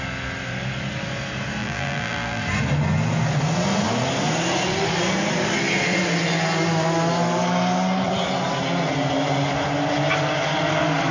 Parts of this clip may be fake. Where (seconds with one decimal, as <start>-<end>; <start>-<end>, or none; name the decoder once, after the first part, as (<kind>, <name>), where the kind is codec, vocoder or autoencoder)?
1.6-2.4 (vocoder, BigVGAN v2)